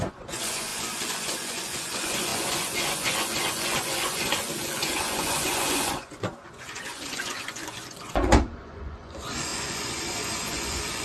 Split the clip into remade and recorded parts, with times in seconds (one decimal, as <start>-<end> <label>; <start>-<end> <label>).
0.0-11.0 remade